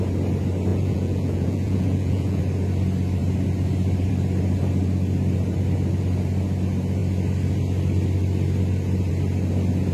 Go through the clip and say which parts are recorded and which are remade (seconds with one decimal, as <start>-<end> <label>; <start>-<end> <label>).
0.0-0.7 recorded; 0.7-2.4 remade; 2.4-9.9 recorded